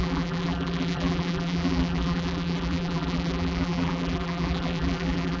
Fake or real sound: fake